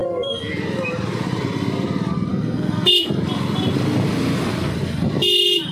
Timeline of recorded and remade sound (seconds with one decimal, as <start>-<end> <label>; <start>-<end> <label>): 0.0-0.5 remade; 0.5-2.3 recorded; 2.3-3.1 remade; 3.1-5.7 recorded